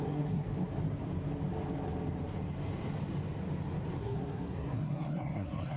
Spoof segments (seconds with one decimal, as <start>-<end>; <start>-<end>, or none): 0.0-0.5; 4.0-5.8